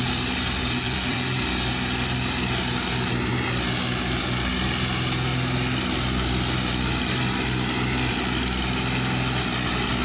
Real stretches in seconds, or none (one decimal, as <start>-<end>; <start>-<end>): 0.0-0.6; 1.4-10.0